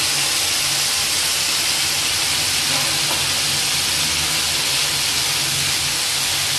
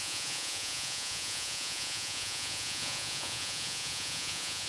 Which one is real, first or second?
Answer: first